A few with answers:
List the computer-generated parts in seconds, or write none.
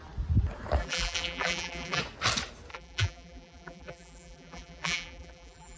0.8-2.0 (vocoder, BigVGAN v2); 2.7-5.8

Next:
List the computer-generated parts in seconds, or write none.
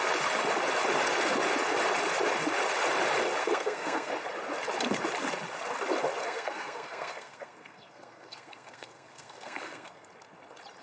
3.4-4.1 (codec, SNAC); 6.2-10.1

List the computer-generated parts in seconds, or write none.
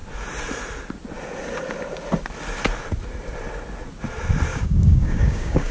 4.5-5.7 (codec, DAC)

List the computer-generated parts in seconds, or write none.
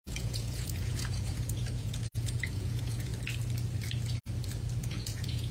0.0-3.1 (vocoder, Vocos); 4.8-5.5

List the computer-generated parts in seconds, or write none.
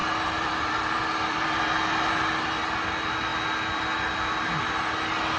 0.0-2.1 (vocoder, BigVGAN v2)